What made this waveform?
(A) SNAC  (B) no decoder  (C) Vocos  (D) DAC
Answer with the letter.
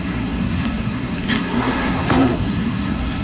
A